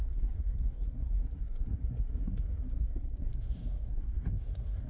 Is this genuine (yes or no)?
no